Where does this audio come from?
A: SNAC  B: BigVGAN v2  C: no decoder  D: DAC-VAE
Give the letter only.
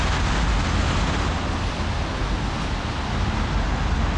C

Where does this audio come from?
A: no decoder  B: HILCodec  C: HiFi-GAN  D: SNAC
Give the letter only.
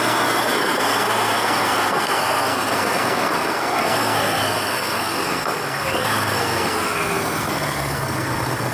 D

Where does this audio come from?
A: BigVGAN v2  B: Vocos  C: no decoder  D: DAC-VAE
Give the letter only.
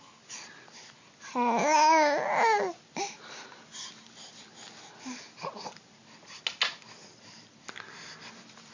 C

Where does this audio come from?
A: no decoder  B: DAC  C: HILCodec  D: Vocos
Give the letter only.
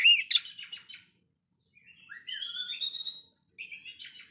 A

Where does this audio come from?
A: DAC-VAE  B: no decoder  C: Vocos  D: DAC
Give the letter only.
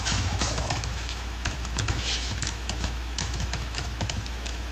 A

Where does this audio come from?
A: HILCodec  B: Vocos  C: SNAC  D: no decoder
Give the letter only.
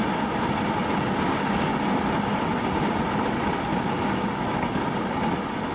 D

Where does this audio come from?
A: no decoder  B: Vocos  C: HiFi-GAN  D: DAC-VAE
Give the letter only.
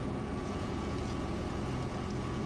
B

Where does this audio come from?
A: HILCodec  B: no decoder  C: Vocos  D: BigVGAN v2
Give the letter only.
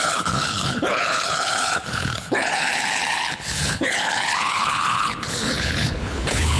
A